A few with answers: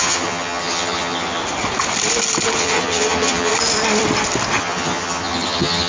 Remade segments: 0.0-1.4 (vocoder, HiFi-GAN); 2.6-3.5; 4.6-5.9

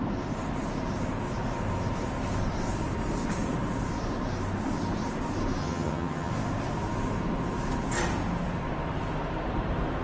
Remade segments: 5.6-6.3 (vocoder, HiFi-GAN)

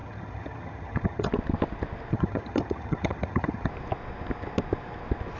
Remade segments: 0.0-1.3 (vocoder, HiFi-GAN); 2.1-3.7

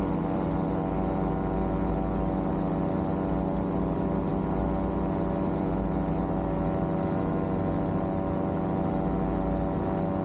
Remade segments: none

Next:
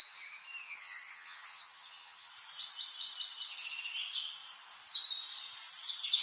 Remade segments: 0.7-2.3 (vocoder, HiFi-GAN)

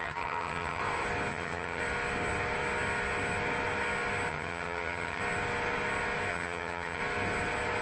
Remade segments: 0.0-0.8 (vocoder, HiFi-GAN); 1.3-1.8; 4.3-5.2; 6.3-7.0

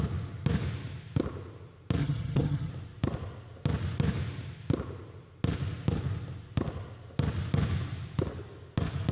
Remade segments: 2.0-2.7 (vocoder, HiFi-GAN)

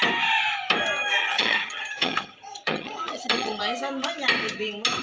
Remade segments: 1.2-3.6 (vocoder, HiFi-GAN)